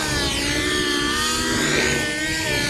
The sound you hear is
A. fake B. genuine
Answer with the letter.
B